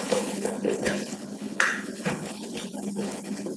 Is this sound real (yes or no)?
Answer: no